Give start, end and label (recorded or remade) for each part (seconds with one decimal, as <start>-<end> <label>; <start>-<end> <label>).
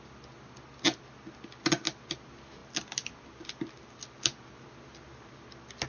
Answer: 0.0-5.9 recorded